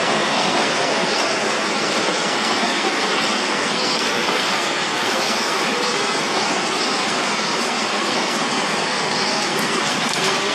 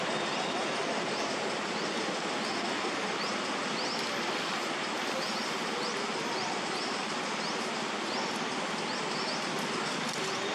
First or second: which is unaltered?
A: second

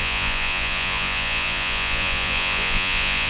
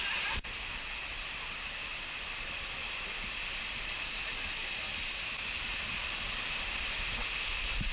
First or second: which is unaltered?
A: second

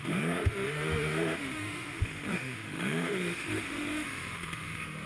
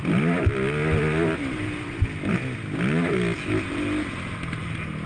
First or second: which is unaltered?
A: second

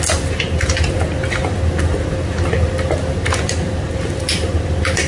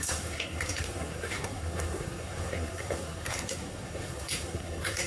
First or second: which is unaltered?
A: first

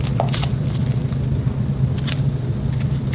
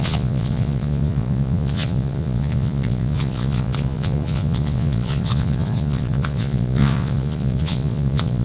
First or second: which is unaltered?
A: first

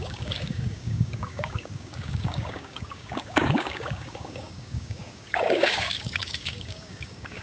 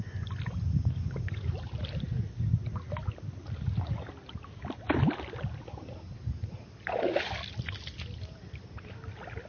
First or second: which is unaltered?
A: second